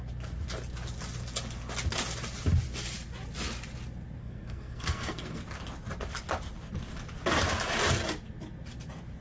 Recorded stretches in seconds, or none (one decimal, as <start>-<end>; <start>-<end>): 0.0-4.2; 5.4-9.2